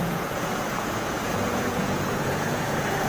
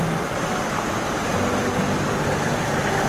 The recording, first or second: second